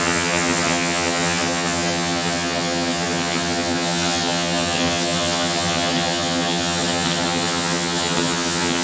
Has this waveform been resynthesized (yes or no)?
yes